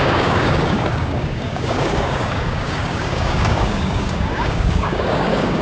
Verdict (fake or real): fake